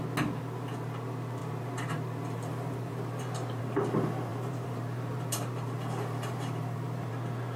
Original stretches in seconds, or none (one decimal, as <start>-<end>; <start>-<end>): 0.0-1.4; 3.6-4.3; 7.1-7.6